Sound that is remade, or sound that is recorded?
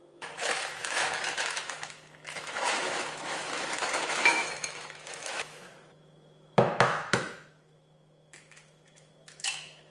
remade